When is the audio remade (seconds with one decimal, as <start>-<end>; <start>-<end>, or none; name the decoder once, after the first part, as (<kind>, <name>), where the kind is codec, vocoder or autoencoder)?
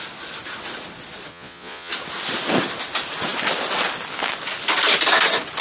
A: 1.3-1.9 (vocoder, Vocos)